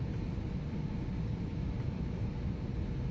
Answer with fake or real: fake